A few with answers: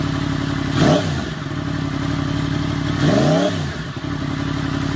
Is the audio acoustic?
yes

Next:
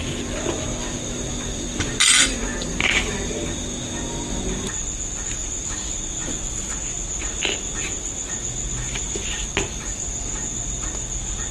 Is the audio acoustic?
yes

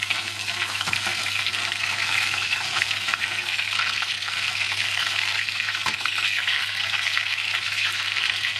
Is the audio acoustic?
no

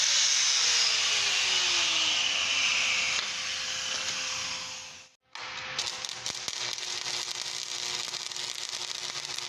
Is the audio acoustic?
yes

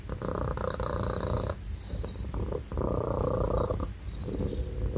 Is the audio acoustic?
yes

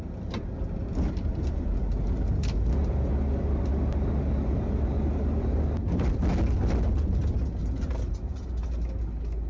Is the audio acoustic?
yes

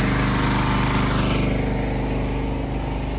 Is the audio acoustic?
yes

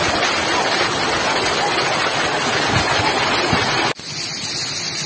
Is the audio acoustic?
yes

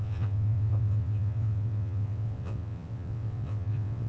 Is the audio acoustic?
no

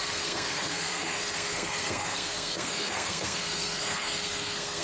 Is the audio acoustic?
no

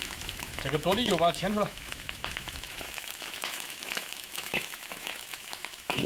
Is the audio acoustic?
no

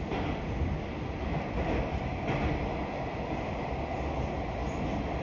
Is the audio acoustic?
yes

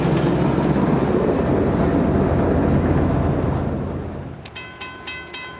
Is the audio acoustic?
yes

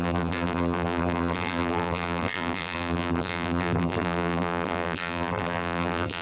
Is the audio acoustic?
no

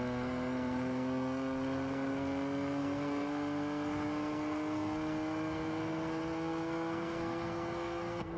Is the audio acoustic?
no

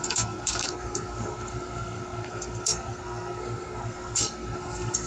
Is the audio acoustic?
no